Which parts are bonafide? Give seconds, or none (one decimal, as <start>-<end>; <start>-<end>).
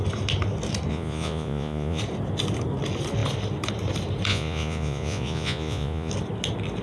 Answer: 0.0-0.9; 2.0-4.3; 6.1-6.8